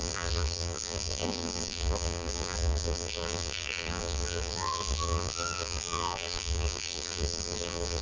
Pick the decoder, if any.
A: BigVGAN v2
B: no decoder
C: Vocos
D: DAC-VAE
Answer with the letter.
A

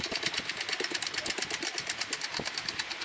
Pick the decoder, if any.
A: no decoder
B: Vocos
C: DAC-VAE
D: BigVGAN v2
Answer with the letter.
D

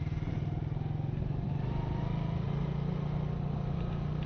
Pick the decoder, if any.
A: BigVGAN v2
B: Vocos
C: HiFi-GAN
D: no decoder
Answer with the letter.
D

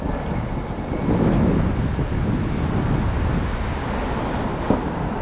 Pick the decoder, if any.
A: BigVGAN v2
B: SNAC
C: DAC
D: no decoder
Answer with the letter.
D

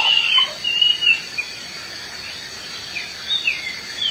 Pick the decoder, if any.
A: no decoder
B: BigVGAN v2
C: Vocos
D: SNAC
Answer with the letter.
A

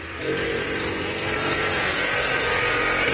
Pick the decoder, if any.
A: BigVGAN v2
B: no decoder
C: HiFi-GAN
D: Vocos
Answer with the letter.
A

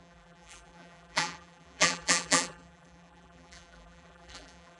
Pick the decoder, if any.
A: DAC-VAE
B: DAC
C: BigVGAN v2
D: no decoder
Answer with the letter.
C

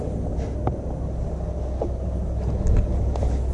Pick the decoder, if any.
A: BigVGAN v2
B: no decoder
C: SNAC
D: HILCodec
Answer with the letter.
B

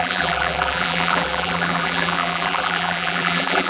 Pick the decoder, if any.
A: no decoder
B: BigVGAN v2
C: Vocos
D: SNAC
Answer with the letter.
B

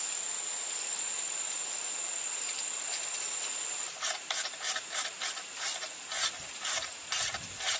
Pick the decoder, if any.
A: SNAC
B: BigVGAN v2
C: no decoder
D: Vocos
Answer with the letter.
B